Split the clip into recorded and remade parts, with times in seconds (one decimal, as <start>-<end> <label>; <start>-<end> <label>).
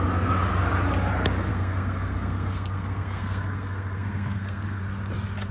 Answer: 0.0-1.5 recorded; 1.5-4.8 remade; 4.8-5.5 recorded